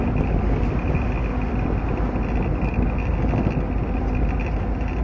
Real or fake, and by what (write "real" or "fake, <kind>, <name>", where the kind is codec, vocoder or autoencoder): real